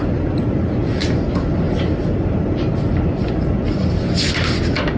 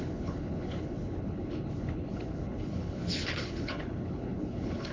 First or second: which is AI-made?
second